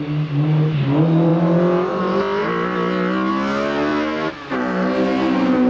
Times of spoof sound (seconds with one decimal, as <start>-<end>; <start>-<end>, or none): none